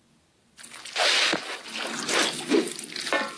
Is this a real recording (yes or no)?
yes